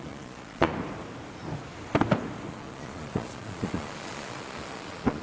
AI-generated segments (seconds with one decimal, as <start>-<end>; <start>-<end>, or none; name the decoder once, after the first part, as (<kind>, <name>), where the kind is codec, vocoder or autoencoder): 0.0-0.7 (vocoder, Vocos); 2.5-5.2